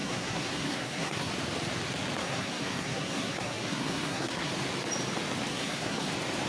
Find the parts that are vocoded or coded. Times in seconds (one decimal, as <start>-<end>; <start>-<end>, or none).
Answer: 0.0-1.3; 2.2-4.5; 5.5-6.1